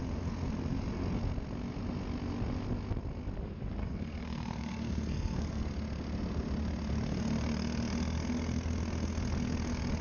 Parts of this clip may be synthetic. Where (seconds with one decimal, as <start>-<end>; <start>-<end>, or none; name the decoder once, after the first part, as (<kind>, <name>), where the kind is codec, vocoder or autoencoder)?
3.8-5.6 (codec, SNAC)